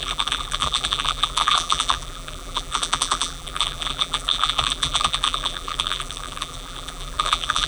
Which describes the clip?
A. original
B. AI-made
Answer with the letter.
B